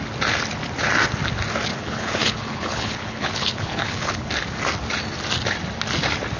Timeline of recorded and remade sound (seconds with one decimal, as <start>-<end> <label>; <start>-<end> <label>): 0.0-1.7 recorded; 1.7-4.3 remade; 4.3-6.4 recorded